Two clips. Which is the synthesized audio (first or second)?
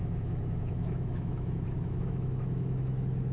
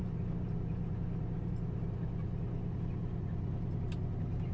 first